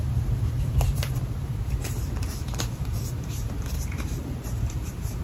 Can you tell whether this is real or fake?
fake